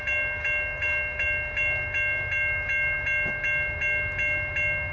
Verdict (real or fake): real